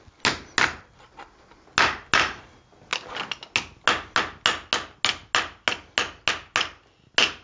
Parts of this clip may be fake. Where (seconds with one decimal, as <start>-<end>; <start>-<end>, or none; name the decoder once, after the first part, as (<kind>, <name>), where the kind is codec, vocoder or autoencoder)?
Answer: none